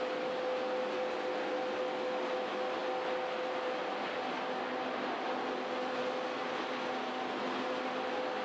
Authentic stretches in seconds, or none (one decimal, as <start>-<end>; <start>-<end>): 0.0-8.4